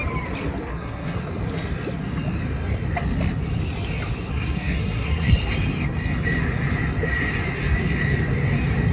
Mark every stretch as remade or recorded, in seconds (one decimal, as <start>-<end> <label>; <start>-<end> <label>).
0.0-0.7 recorded; 0.7-1.2 remade; 1.2-4.3 recorded; 4.3-5.3 remade; 5.3-8.9 recorded